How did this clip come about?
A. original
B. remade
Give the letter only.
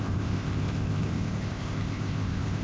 B